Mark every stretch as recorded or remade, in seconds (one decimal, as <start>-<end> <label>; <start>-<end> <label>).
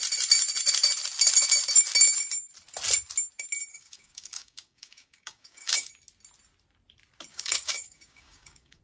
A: 0.0-3.7 recorded; 3.7-5.9 remade; 5.9-7.3 recorded; 7.3-8.8 remade